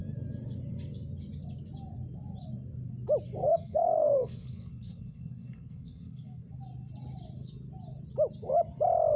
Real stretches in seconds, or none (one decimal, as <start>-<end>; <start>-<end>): 0.0-3.4; 6.4-9.2